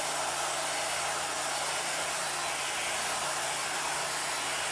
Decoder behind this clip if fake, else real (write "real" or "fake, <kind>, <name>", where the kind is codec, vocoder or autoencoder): real